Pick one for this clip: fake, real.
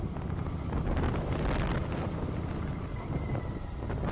fake